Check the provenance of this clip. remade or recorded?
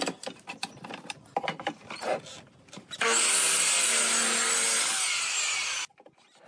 recorded